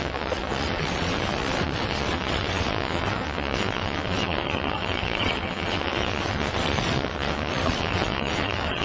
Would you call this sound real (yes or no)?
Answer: no